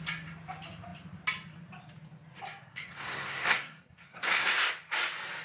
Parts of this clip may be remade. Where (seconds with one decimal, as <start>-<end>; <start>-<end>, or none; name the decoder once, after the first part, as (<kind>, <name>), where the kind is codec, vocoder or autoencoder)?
2.7-4.7 (codec, SNAC)